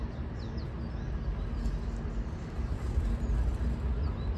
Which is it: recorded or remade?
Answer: recorded